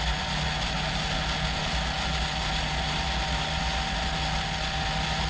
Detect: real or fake real